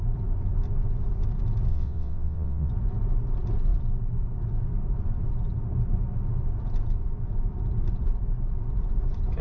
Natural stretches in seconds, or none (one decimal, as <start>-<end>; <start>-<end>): 0.0-1.7; 2.7-9.4